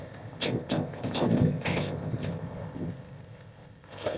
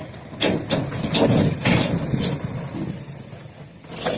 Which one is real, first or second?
second